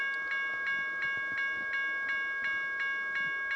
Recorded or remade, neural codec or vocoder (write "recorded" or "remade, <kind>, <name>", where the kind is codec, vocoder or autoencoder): recorded